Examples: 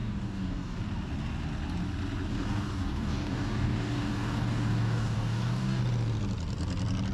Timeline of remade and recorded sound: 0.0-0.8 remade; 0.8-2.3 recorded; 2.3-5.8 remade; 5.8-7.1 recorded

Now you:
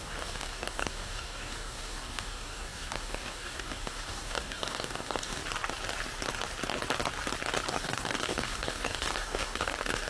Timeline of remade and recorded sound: 0.0-5.4 remade; 5.4-7.7 recorded; 7.7-10.1 remade

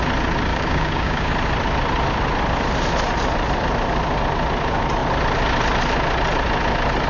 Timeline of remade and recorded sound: 0.0-0.5 recorded; 0.5-1.3 remade; 1.3-7.1 recorded

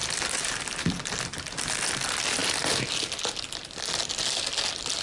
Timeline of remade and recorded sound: 0.0-5.0 recorded

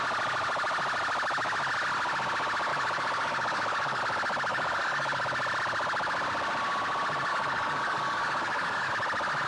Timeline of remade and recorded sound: 0.0-2.7 recorded; 2.7-4.0 remade; 4.0-4.5 recorded; 4.5-5.2 remade; 5.2-7.3 recorded; 7.3-8.9 remade; 8.9-9.5 recorded

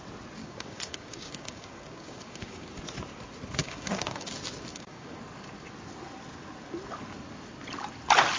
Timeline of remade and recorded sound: 0.0-0.4 recorded; 0.4-2.7 remade; 2.7-3.6 recorded; 3.6-4.3 remade; 4.3-4.7 recorded; 4.7-5.2 remade; 5.2-8.4 recorded

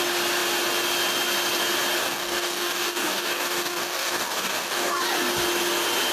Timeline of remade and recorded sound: 0.0-2.0 recorded; 2.0-5.0 remade; 5.0-6.1 recorded

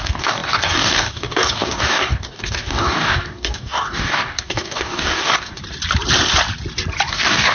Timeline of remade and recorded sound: 0.0-5.6 remade; 5.6-7.1 recorded; 7.1-7.5 remade